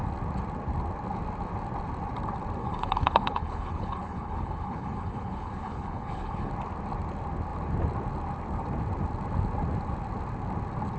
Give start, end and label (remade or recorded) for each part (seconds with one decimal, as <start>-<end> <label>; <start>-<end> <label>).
0.0-2.6 recorded; 2.6-6.5 remade; 6.5-11.0 recorded